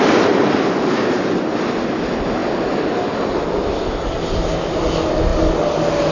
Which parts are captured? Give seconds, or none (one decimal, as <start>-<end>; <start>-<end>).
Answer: 0.0-6.1